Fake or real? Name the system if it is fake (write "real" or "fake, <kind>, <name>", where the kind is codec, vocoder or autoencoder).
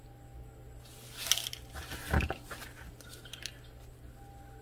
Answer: real